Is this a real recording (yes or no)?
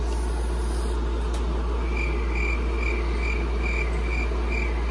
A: yes